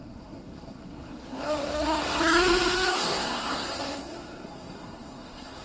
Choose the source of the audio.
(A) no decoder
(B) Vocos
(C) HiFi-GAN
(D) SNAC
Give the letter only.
D